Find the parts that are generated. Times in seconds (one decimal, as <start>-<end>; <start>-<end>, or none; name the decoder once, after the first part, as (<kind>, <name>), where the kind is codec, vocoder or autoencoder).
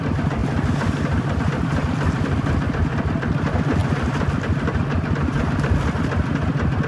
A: none